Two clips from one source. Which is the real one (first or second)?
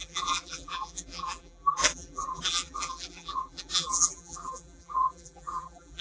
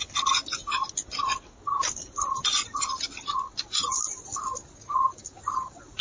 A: second